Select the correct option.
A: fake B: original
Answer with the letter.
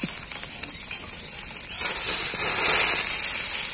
B